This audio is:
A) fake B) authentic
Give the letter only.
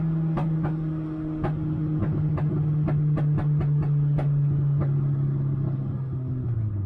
B